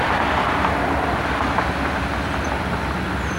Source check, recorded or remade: recorded